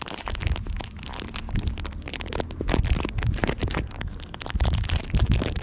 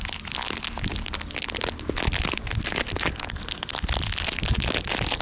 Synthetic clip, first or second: first